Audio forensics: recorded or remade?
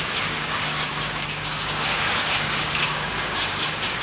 remade